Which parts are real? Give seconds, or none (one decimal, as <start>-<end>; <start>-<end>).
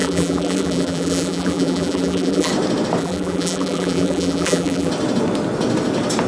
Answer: 2.5-3.0; 4.9-6.3